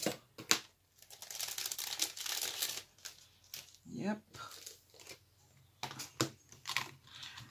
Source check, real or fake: real